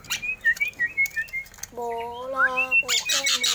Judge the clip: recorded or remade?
recorded